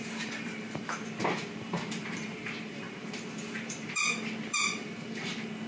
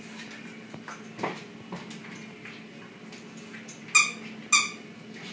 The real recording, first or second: second